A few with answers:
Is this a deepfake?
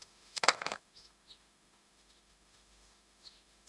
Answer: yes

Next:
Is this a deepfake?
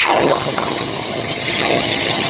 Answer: yes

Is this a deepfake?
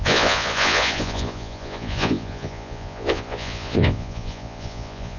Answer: yes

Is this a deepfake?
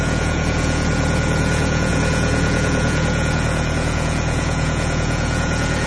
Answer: yes